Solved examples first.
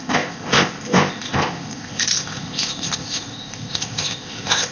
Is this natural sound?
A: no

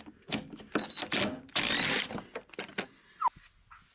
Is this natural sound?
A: yes